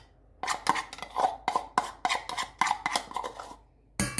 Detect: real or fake real